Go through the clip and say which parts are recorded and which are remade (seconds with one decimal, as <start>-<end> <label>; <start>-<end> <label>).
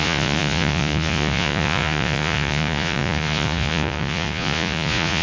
0.0-5.2 remade